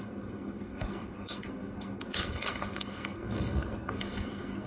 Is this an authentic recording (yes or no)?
no